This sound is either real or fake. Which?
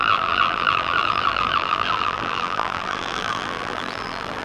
fake